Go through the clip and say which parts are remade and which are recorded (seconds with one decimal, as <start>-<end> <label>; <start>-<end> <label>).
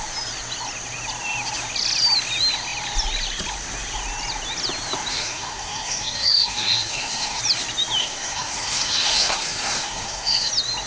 0.0-5.1 recorded; 5.1-7.4 remade; 7.4-8.0 recorded; 8.0-10.5 remade; 10.5-10.9 recorded